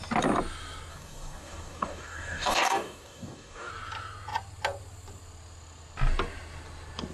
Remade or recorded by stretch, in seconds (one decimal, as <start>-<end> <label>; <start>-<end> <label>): 0.0-0.9 recorded; 0.9-3.7 remade; 3.7-7.1 recorded